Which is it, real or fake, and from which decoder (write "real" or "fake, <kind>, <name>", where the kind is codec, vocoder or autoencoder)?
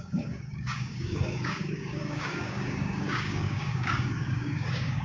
fake, codec, DAC